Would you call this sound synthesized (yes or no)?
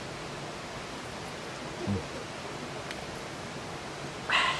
no